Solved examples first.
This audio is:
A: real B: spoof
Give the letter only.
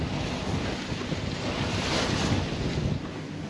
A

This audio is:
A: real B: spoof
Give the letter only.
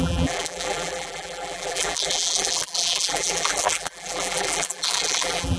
B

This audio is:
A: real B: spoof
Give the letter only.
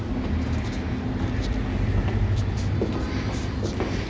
A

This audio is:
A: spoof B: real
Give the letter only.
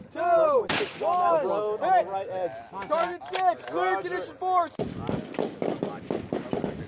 B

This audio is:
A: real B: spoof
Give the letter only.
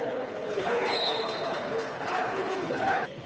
B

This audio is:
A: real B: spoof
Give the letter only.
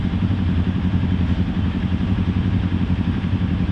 B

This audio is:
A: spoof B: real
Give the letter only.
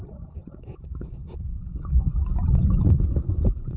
A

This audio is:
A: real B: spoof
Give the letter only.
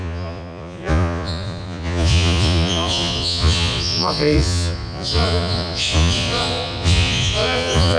B